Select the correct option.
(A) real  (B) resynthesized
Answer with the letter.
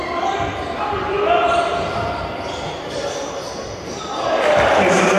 B